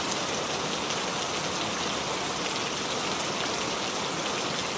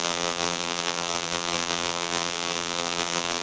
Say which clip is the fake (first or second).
second